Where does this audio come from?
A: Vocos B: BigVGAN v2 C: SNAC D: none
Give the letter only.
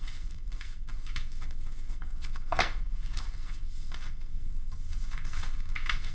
C